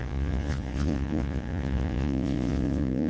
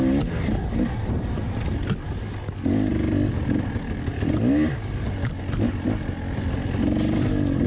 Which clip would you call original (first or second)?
second